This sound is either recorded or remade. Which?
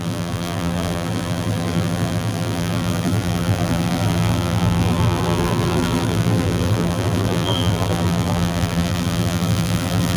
remade